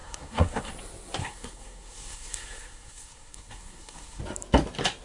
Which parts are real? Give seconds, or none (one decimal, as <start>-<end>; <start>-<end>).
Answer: 0.7-1.2; 4.2-5.0

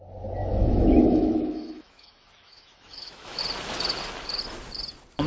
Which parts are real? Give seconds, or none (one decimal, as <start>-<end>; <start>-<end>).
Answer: 0.0-0.4; 3.4-5.3

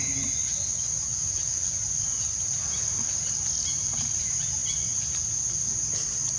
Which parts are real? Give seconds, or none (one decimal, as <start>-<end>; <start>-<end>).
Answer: 0.0-6.4

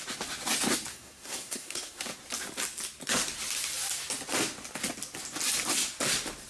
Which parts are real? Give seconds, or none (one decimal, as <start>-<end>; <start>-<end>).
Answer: 0.0-0.9; 2.0-6.5